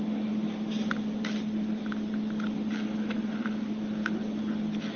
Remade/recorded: recorded